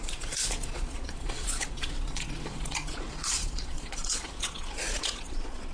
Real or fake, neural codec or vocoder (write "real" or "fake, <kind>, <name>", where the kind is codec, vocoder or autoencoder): fake, vocoder, Vocos